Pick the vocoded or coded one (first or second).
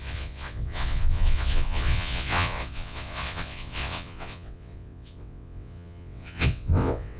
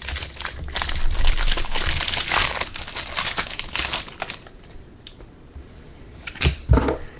first